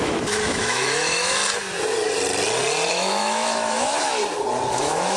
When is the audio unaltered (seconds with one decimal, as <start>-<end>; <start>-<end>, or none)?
1.4-2.9; 4.2-4.7